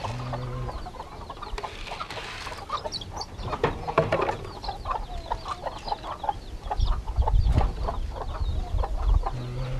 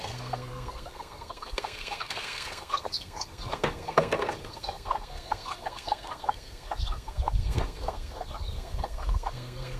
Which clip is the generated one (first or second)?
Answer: second